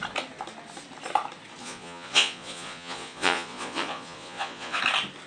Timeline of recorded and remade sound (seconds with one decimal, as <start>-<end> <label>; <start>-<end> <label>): 0.0-1.6 recorded; 1.6-4.8 remade; 4.8-5.3 recorded